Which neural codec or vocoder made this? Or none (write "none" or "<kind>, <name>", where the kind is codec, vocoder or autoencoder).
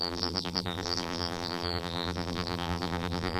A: vocoder, BigVGAN v2